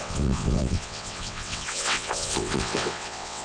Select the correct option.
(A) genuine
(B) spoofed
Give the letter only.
B